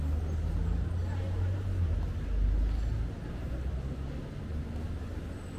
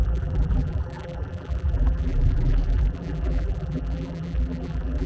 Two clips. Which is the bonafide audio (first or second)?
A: first